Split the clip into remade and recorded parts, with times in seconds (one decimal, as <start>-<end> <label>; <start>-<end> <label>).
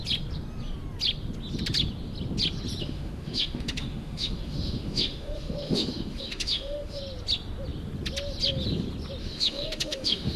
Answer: 0.0-2.8 recorded; 2.8-7.0 remade; 7.0-9.2 recorded; 9.2-10.4 remade